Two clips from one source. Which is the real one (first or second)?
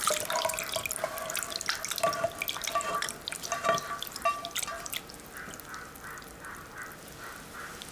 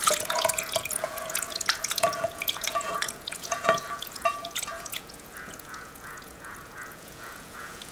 first